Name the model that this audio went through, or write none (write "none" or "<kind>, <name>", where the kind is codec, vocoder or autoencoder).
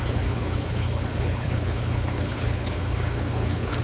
codec, HILCodec